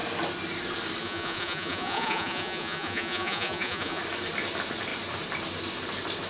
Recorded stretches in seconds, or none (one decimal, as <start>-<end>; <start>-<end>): 0.0-1.0; 4.0-6.3